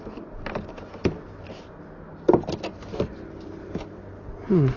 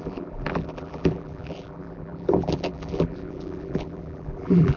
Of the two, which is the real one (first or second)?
first